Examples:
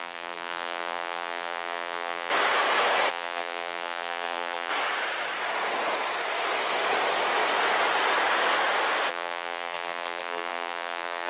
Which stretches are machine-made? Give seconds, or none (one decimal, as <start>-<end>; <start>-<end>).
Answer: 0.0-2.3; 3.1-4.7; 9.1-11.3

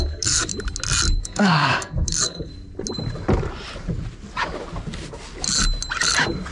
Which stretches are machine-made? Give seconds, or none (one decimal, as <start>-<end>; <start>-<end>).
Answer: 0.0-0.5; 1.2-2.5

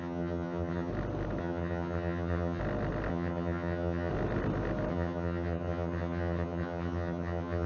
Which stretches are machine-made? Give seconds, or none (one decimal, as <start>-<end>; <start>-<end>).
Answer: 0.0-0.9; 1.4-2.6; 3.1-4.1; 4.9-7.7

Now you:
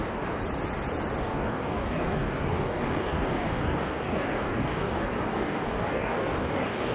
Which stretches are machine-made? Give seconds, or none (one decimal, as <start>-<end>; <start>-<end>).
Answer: 0.0-0.4; 1.2-6.9

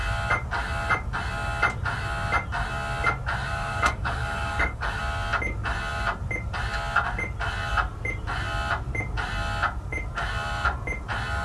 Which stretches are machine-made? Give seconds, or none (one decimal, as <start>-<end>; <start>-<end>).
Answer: 3.4-5.0

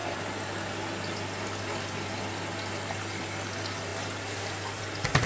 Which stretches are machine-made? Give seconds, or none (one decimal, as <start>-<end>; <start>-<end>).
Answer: none